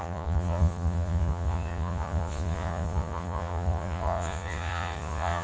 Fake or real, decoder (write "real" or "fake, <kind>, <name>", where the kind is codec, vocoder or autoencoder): fake, vocoder, Vocos